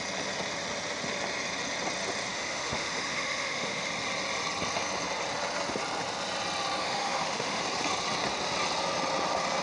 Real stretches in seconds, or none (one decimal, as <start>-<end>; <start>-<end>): 0.0-2.3; 3.9-6.8; 7.6-9.6